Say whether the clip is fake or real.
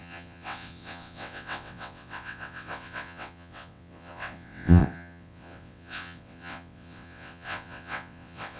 fake